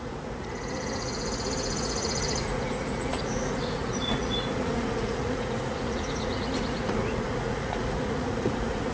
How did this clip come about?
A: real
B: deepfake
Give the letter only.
B